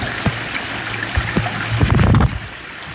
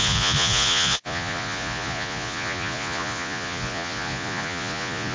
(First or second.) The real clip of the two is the first